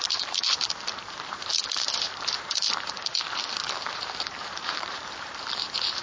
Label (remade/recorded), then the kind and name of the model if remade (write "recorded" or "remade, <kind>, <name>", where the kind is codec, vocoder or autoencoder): remade, vocoder, BigVGAN v2